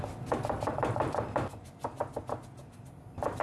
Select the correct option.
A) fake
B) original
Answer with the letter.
B